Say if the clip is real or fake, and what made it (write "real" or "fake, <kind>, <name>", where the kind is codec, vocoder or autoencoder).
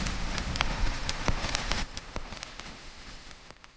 fake, autoencoder, DAC-VAE